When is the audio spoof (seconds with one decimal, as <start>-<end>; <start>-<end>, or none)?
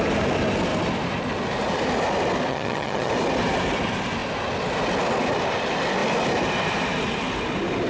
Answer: 2.5-3.1